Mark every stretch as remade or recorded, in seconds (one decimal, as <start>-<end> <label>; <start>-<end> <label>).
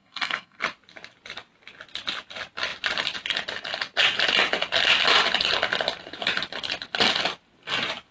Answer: 0.0-0.6 remade; 0.6-8.1 recorded